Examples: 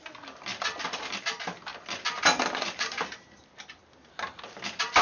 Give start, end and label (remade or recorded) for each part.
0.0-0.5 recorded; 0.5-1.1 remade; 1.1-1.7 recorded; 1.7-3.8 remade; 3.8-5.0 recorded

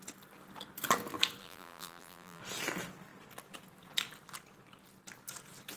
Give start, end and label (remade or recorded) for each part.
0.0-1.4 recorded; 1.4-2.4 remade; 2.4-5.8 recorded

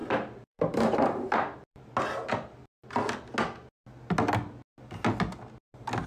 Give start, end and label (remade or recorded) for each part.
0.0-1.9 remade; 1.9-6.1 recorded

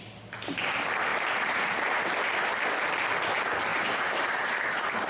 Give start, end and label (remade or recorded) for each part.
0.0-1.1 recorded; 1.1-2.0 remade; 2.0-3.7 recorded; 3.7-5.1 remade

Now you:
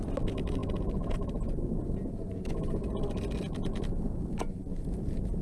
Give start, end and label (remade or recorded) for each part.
0.0-5.4 recorded

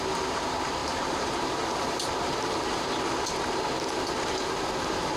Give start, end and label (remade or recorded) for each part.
0.0-0.8 recorded; 0.8-2.2 remade; 2.2-5.2 recorded

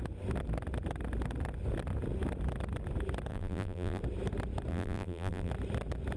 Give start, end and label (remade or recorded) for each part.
0.0-3.3 recorded; 3.3-4.0 remade; 4.0-4.7 recorded; 4.7-5.5 remade; 5.5-6.2 recorded

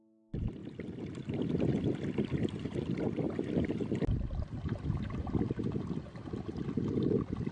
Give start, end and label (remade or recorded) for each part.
0.0-7.5 recorded